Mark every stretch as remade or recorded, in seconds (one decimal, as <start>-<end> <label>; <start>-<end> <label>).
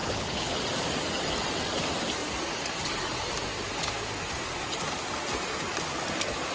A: 0.0-0.6 remade; 0.6-6.5 recorded